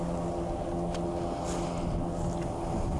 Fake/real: real